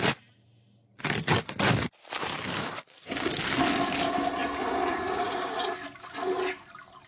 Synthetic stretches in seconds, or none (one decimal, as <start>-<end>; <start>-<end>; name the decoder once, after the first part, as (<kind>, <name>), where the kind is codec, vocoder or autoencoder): 2.0-3.1 (codec, DAC)

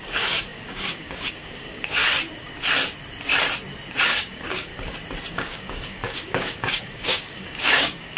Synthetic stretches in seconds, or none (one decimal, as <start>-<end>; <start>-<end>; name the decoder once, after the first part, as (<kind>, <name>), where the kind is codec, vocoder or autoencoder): 0.0-2.0 (codec, DAC); 4.0-4.7; 5.3-8.2

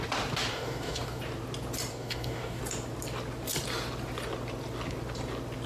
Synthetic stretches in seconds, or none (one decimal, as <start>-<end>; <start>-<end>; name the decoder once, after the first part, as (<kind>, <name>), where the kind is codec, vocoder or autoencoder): 0.5-1.2 (codec, DAC); 1.9-2.6

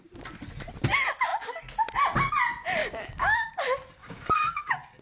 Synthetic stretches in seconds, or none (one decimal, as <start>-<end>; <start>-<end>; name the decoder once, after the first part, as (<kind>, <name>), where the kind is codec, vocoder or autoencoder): 2.8-3.5 (codec, DAC); 4.0-5.0

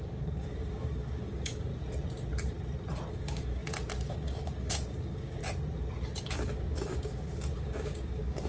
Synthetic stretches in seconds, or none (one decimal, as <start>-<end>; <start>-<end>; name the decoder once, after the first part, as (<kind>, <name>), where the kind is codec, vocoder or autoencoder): 0.0-1.7 (codec, DAC); 3.1-3.6; 4.1-5.4; 6.2-8.5

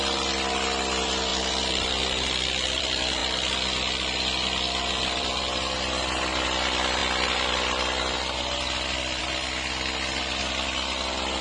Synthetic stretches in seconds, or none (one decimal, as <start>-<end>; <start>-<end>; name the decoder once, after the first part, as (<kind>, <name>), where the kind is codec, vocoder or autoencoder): none

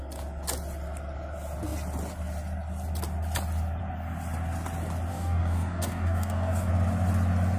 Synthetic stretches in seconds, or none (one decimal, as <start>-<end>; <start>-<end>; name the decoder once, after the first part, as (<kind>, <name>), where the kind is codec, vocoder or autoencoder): 5.1-6.7 (codec, DAC)

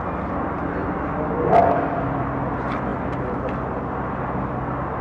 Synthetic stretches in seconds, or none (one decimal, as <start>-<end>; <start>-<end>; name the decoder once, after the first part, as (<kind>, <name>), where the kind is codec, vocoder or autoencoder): none